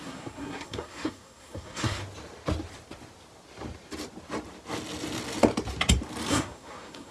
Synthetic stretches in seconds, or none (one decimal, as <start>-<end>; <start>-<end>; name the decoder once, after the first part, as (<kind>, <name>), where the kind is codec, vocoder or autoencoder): 0.0-2.0 (codec, SNAC); 6.3-7.1